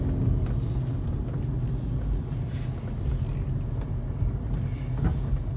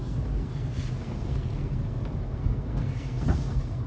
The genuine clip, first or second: first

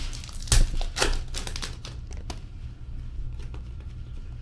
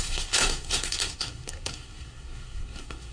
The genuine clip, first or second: first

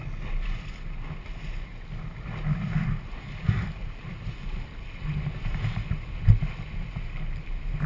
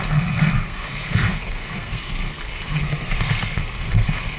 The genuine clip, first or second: first